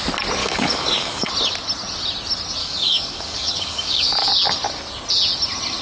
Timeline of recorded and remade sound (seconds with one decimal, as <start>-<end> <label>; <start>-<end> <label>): 0.0-0.4 recorded; 0.4-1.3 remade; 1.3-2.6 recorded; 2.6-4.3 remade; 4.3-5.8 recorded